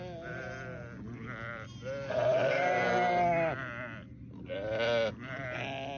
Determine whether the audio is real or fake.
real